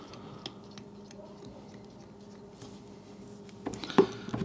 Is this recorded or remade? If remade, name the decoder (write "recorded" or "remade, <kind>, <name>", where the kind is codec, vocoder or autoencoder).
recorded